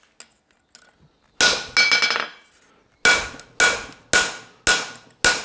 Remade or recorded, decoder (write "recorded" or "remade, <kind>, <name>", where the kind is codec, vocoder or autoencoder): recorded